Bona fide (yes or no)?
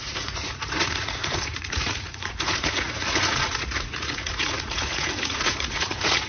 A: no